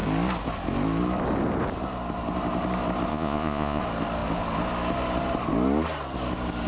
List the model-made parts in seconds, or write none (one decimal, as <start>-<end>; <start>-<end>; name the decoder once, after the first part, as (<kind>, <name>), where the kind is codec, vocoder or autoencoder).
3.1-3.8 (vocoder, Vocos)